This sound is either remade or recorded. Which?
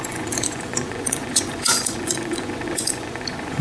remade